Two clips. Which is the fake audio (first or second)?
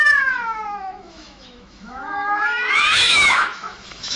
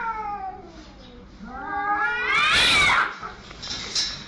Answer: first